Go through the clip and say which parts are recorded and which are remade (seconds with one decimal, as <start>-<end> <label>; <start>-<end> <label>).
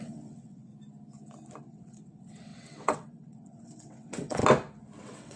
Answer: 0.0-0.7 remade; 0.7-1.6 recorded; 1.6-4.4 remade; 4.4-5.0 recorded; 5.0-5.4 remade